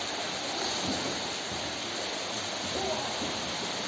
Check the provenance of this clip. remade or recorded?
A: recorded